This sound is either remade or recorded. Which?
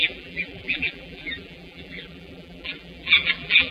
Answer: remade